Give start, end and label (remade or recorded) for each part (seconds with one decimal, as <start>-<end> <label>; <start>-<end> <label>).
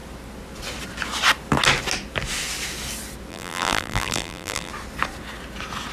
0.0-3.3 recorded; 3.3-4.7 remade; 4.7-5.9 recorded